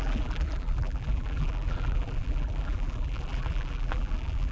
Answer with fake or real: fake